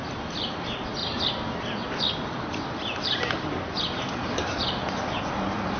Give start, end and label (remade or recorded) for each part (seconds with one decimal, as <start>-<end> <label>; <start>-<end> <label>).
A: 0.0-1.0 recorded; 1.0-4.0 remade; 4.0-4.6 recorded; 4.6-5.8 remade